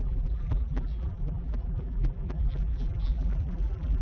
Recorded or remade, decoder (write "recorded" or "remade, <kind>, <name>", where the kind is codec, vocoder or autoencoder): remade, vocoder, BigVGAN v2